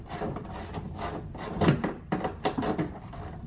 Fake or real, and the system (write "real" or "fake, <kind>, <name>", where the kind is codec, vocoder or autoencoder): real